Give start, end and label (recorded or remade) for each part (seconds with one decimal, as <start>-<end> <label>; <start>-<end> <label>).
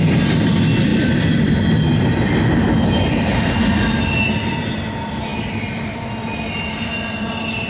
0.0-7.7 recorded